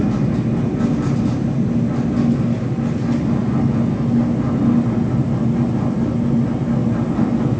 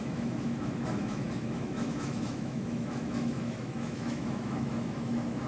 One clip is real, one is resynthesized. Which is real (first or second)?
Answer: first